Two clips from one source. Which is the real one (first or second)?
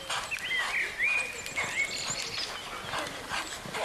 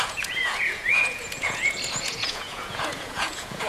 first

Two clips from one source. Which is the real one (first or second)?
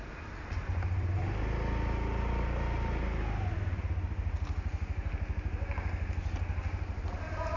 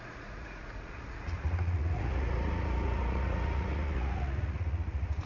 first